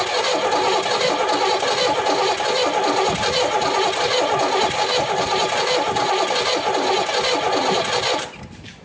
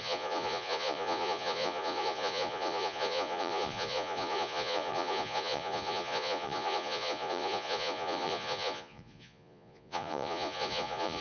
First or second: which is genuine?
first